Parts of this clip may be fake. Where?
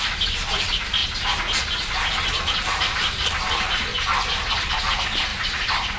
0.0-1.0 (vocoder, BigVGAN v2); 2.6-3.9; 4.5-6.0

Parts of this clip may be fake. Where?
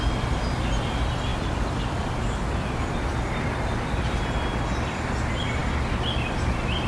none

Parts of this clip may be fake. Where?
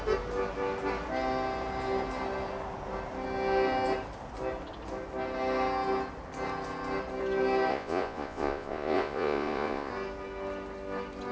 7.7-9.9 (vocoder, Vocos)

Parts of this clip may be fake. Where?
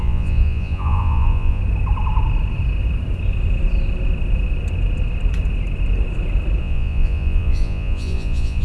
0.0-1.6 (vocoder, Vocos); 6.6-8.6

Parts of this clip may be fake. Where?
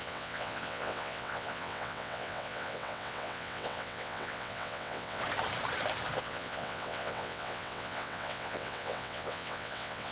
0.0-5.2 (vocoder, WaveNeXt); 6.2-10.1